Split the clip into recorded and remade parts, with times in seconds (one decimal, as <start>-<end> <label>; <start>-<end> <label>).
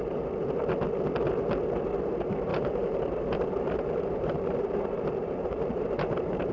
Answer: 0.0-2.5 recorded; 2.5-6.5 remade